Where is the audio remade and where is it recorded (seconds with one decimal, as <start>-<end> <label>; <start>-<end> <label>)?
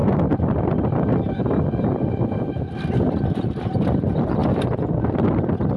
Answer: 0.0-5.8 recorded